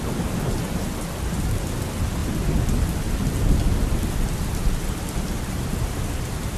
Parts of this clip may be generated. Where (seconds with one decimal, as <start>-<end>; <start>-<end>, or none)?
none

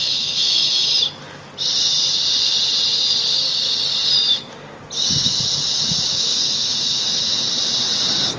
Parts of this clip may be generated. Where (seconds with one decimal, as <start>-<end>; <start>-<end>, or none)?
0.0-0.9; 6.1-7.5

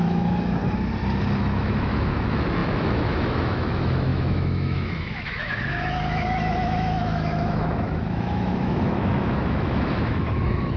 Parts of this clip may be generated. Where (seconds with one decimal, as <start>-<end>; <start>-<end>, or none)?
0.0-0.6; 1.4-10.8

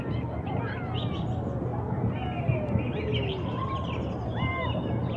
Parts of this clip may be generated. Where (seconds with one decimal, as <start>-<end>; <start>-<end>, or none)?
none

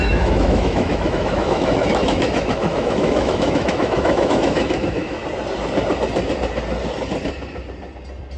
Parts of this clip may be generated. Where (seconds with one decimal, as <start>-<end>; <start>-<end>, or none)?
0.0-5.2

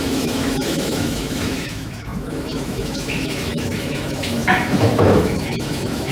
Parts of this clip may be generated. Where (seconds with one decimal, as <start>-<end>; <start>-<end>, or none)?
0.0-6.1

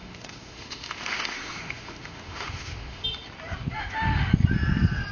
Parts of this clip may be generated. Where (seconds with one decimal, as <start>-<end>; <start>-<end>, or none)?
0.0-3.0; 3.8-4.3